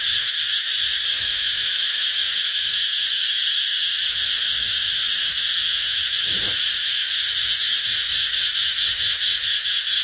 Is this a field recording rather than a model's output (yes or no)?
no